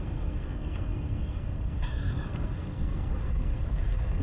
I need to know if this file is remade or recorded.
remade